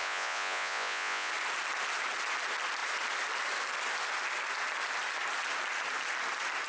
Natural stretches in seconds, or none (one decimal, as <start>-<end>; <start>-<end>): 1.3-6.7